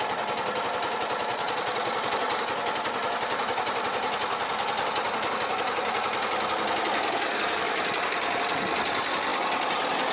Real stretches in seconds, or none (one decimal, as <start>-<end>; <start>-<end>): 0.0-1.2; 2.1-10.1